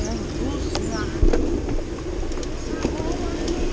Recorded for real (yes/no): yes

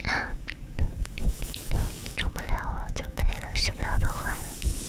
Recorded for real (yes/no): no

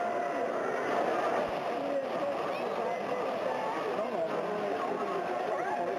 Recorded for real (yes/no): yes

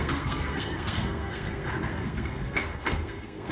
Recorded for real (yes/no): no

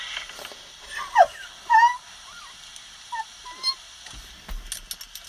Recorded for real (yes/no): yes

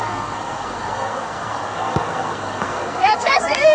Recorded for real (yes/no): no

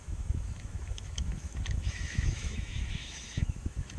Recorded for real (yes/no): no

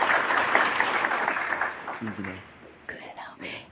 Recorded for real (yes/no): yes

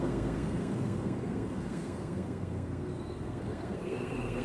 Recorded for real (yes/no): no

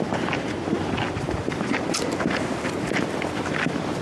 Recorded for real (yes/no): yes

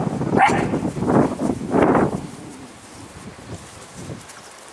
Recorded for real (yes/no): yes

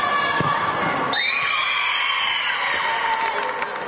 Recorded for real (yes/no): yes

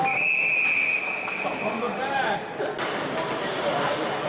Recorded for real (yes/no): yes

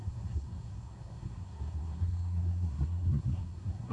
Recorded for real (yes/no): no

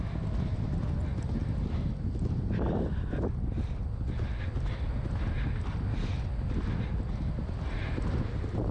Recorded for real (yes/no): yes